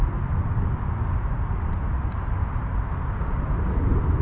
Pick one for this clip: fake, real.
real